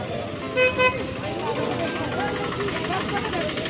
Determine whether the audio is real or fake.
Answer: real